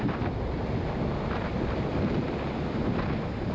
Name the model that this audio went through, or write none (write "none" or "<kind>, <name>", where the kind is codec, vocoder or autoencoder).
none